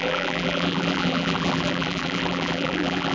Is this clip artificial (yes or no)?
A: yes